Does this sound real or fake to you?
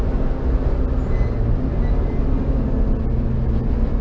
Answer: real